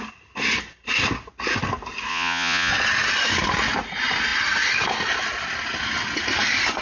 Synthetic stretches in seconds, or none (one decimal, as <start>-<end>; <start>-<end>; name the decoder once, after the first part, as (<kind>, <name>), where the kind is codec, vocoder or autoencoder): 2.1-2.7 (vocoder, Vocos)